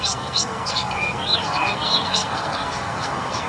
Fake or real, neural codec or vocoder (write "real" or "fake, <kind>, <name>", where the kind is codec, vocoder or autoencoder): fake, codec, SNAC